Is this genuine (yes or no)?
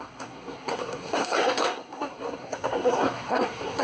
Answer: no